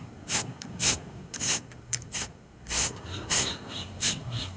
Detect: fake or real fake